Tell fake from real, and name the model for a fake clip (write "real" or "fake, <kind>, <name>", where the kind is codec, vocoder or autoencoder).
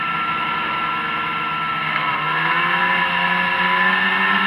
real